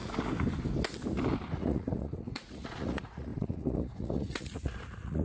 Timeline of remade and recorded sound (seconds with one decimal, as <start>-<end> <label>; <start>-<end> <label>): 0.0-1.5 recorded; 1.5-5.2 remade